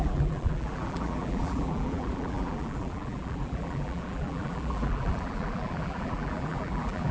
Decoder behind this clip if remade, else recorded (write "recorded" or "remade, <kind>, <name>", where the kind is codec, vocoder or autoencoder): remade, vocoder, BigVGAN v2